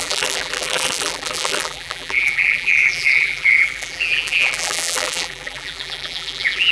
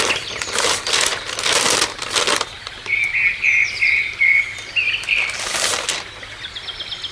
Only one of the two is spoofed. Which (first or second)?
first